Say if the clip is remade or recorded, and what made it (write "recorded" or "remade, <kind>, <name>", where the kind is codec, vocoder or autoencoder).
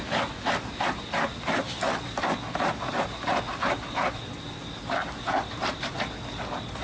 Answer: recorded